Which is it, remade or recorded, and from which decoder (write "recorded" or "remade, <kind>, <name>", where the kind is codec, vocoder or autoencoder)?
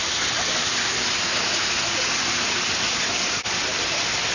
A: recorded